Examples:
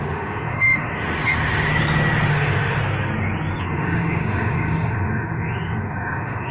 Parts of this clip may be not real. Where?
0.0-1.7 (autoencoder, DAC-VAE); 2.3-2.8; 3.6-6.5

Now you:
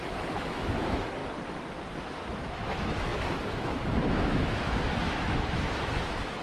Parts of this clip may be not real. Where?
0.0-1.2 (autoencoder, DAC-VAE); 2.0-6.4

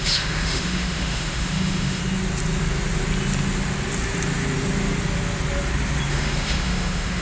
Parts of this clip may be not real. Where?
0.0-2.0 (autoencoder, DAC-VAE); 6.1-7.2

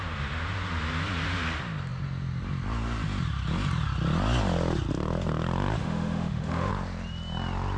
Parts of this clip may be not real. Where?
5.8-6.7 (autoencoder, DAC-VAE)

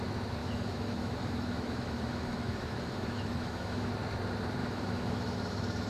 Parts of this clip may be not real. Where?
0.4-3.9 (autoencoder, DAC-VAE); 4.6-5.9